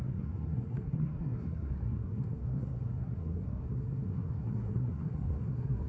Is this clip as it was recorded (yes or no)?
no